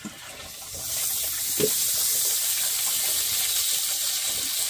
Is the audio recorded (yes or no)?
yes